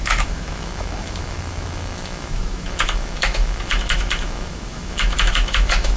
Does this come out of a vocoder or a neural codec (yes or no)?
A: yes